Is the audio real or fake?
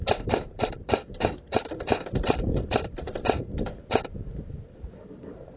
fake